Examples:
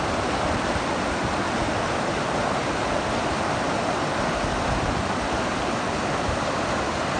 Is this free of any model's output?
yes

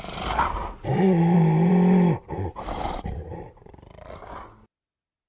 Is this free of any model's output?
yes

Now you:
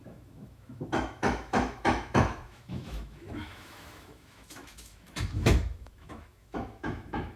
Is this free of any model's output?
no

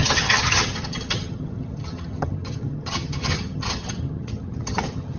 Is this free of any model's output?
no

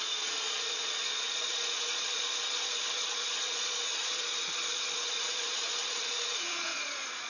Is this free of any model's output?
no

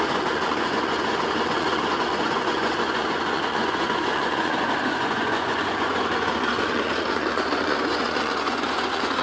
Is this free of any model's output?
no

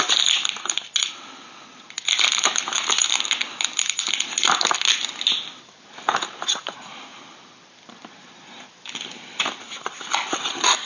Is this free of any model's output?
yes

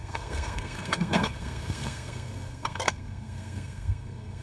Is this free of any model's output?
no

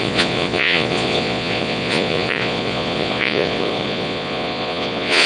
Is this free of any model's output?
no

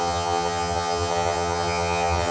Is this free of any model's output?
no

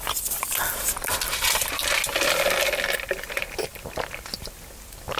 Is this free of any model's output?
yes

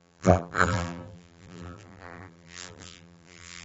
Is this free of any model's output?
no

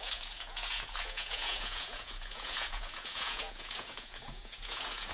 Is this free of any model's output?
no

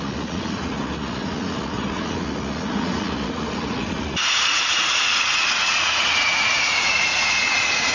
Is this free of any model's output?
no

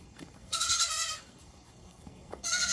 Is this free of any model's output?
no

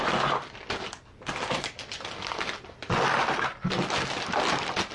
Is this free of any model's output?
yes